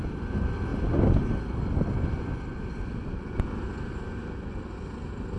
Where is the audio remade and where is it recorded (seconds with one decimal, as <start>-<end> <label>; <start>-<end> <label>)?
0.0-5.4 recorded